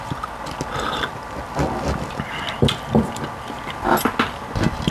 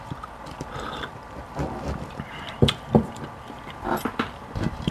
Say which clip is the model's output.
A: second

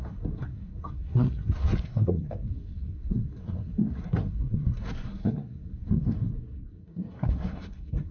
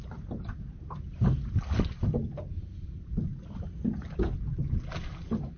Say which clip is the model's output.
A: first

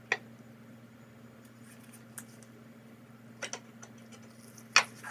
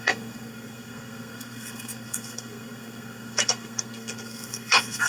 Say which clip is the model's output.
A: second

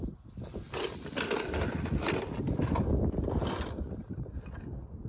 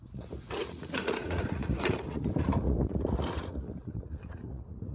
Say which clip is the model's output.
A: second